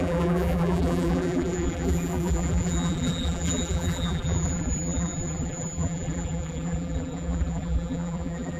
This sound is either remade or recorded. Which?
remade